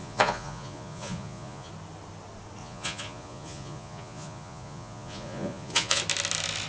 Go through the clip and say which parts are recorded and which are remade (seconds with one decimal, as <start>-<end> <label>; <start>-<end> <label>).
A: 0.0-1.7 remade; 1.7-2.6 recorded; 2.6-6.0 remade; 6.0-6.7 recorded